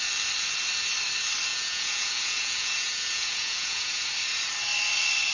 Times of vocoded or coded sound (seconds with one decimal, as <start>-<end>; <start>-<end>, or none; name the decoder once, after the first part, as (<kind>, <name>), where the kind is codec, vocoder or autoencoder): 1.5-4.1 (vocoder, Vocos)